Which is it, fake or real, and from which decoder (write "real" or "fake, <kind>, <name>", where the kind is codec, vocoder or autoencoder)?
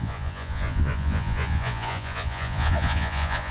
fake, vocoder, Vocos